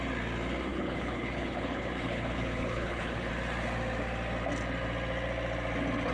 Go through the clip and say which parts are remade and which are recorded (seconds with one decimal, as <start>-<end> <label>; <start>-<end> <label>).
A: 0.0-0.7 recorded; 0.7-3.3 remade; 3.3-6.1 recorded